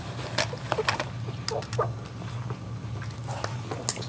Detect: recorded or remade recorded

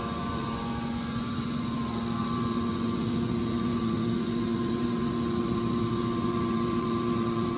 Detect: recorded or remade remade